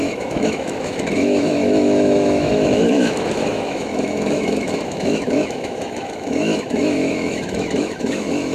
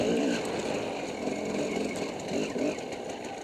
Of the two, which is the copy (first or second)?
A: first